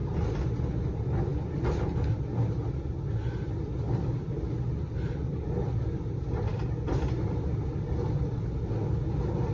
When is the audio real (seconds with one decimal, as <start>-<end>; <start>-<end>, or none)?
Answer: 0.0-9.5